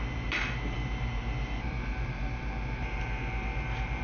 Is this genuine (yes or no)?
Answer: no